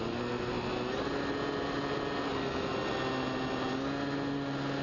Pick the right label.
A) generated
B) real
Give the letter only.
B